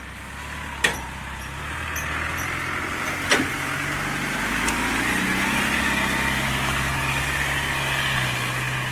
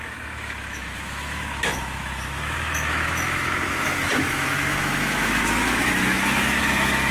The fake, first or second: second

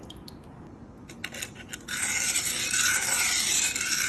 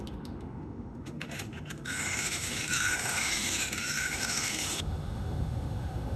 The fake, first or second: second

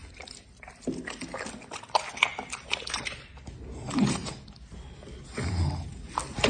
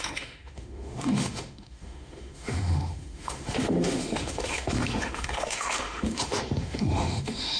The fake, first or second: second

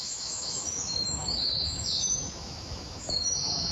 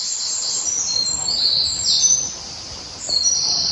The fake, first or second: first